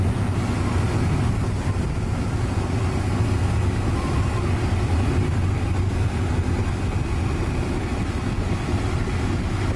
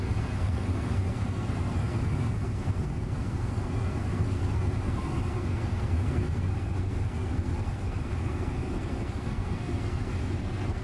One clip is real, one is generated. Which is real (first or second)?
first